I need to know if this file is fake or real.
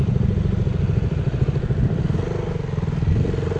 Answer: real